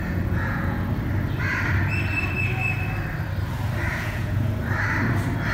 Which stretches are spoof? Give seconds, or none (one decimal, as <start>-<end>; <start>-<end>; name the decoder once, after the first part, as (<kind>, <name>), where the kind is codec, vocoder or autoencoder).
0.0-0.9 (vocoder, Vocos); 3.9-4.6